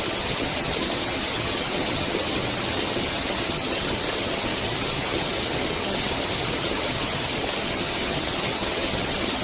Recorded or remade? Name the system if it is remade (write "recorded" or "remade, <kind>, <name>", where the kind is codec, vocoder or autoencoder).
remade, vocoder, HiFi-GAN